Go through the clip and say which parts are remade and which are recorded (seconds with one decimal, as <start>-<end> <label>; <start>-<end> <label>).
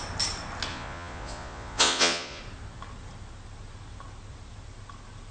0.0-0.7 recorded; 0.7-2.4 remade; 2.4-5.3 recorded